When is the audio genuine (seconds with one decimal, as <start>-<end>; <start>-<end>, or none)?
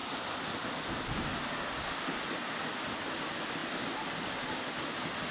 0.0-5.3